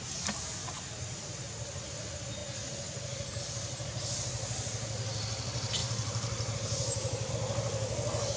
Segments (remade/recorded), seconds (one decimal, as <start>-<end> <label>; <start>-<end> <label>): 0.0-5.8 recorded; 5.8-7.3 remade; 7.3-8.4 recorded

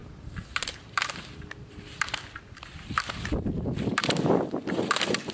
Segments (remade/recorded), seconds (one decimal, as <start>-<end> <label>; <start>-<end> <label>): 0.0-5.3 recorded

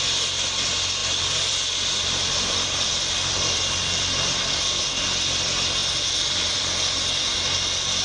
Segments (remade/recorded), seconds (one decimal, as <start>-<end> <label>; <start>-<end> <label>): 0.0-1.0 recorded; 1.0-4.8 remade; 4.8-5.8 recorded; 5.8-6.6 remade; 6.6-8.0 recorded

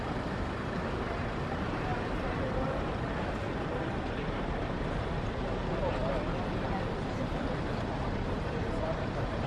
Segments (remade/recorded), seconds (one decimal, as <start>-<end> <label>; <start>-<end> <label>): 0.0-6.0 remade; 6.0-9.0 recorded; 9.0-9.5 remade